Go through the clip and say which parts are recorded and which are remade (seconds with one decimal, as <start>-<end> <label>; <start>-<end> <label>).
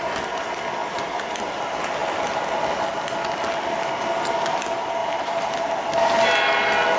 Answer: 0.0-0.8 recorded; 0.8-1.6 remade; 1.6-5.0 recorded; 5.0-5.7 remade; 5.7-7.0 recorded